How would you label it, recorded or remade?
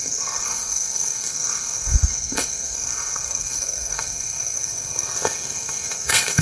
remade